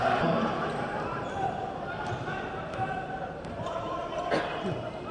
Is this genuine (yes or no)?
no